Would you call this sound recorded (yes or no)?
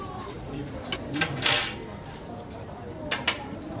yes